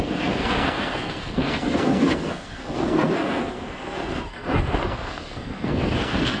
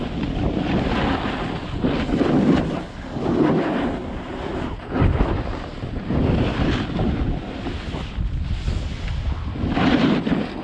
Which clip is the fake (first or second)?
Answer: first